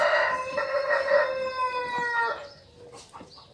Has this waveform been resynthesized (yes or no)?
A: no